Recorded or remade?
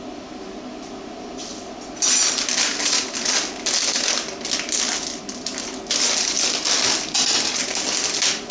recorded